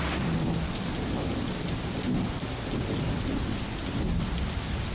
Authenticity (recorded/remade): recorded